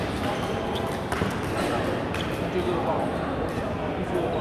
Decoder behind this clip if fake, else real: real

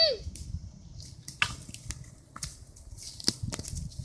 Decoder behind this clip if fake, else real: real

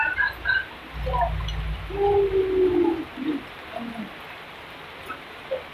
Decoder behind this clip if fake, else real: real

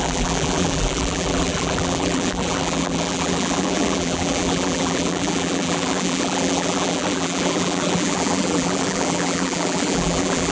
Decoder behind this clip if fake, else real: fake, vocoder, BigVGAN v2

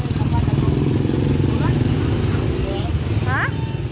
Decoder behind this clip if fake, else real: real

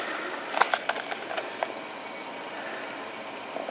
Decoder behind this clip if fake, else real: real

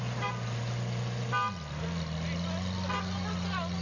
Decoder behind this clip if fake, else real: real